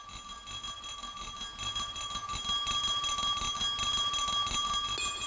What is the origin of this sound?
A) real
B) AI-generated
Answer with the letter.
A